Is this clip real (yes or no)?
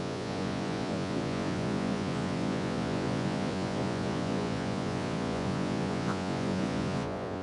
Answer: no